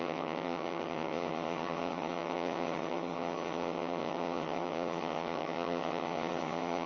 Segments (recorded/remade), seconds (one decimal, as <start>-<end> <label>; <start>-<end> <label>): 0.0-6.9 remade